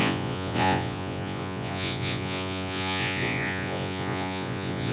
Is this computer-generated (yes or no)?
yes